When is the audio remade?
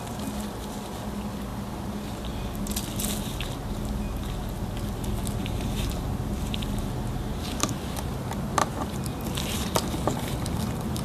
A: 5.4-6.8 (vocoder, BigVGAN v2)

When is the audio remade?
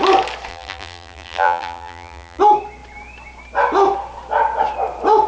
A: 0.5-2.4 (vocoder, BigVGAN v2)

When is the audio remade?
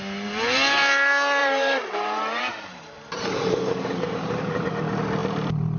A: 1.4-4.7 (vocoder, BigVGAN v2); 5.2-5.8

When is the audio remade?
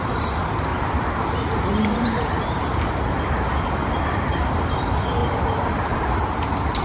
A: 0.7-4.8 (vocoder, BigVGAN v2); 5.2-6.8